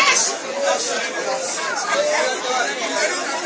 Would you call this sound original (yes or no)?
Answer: yes